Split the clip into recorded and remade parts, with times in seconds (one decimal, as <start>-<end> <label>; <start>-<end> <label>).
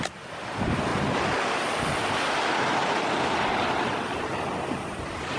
0.0-5.4 recorded